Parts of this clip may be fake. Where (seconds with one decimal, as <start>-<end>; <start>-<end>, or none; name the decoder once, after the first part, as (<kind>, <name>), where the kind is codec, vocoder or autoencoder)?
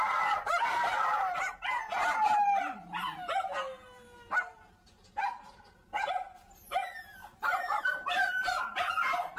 7.2-7.8 (vocoder, BigVGAN v2)